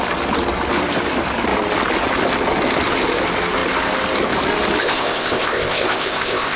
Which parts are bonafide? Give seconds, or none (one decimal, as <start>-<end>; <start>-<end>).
0.0-4.8